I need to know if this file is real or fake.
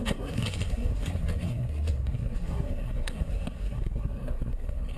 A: fake